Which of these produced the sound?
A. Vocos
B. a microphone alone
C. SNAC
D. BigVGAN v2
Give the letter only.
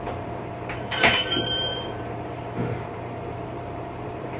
D